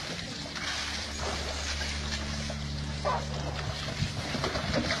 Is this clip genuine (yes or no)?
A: yes